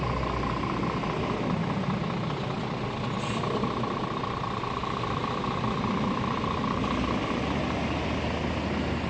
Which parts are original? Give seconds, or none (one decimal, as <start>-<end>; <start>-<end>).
0.0-5.2; 7.3-9.1